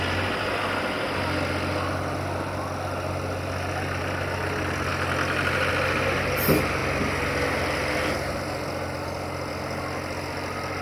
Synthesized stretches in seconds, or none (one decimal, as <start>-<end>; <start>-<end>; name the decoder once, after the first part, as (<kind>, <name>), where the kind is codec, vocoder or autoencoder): none